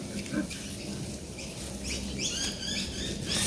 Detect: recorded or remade recorded